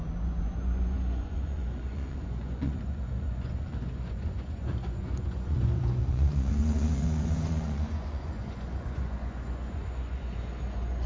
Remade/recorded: remade